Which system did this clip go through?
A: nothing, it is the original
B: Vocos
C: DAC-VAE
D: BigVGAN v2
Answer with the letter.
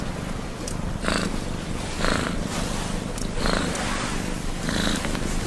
A